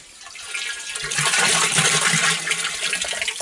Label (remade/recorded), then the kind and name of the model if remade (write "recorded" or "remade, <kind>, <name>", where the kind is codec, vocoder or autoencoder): recorded